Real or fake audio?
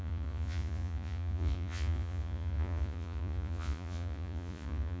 fake